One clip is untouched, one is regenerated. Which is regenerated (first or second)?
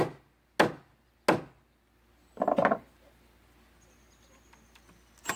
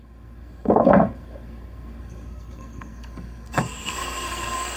second